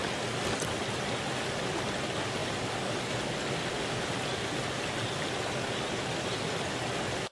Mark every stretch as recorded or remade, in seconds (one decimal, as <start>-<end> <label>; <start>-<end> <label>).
0.0-7.3 recorded